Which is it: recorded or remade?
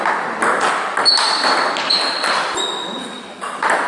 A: recorded